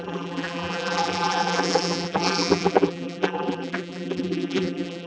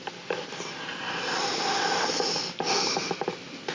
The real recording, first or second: second